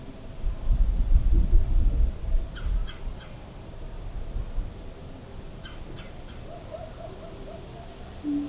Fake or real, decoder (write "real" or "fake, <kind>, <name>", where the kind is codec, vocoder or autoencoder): real